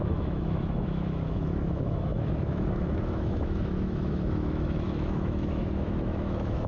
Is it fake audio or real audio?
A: fake